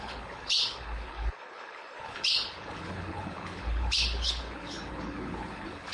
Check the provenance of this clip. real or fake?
fake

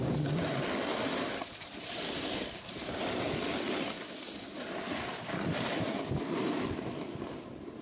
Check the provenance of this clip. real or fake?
real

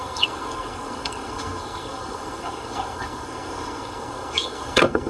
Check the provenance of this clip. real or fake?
fake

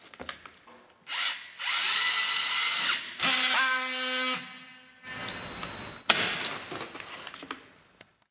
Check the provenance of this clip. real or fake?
real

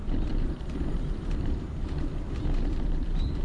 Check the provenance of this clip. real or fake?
fake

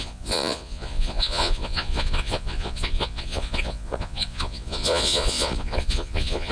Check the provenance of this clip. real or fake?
fake